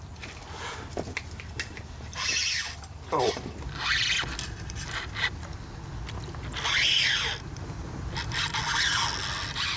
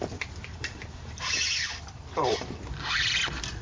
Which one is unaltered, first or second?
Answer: first